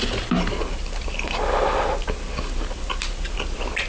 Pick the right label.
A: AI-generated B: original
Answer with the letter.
B